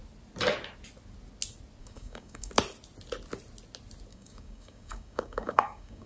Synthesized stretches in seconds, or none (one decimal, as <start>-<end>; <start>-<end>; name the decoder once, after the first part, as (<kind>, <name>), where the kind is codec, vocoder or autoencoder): 1.8-2.5 (codec, DAC); 4.1-6.1